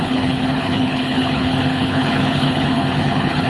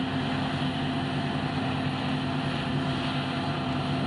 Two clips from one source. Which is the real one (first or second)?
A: second